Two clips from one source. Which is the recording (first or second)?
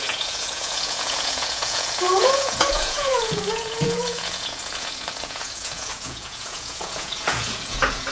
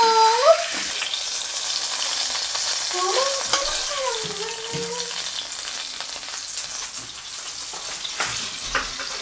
second